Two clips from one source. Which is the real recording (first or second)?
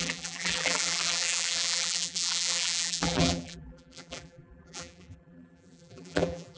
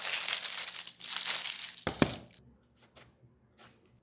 second